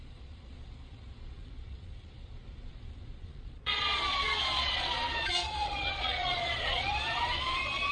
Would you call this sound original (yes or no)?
no